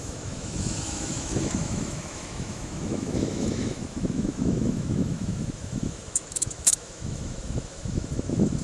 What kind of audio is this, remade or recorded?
remade